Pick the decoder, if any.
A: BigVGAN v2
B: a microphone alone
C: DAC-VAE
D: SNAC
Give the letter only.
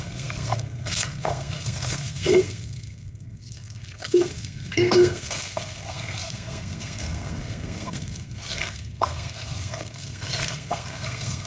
D